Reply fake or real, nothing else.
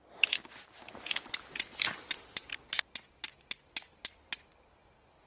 real